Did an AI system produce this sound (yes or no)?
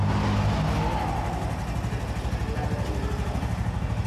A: no